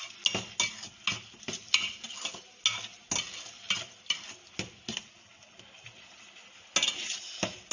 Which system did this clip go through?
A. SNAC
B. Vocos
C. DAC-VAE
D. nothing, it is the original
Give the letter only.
D